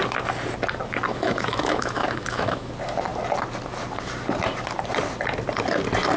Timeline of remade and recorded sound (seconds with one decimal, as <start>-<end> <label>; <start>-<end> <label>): 0.0-1.1 recorded; 1.1-2.7 remade; 2.7-6.2 recorded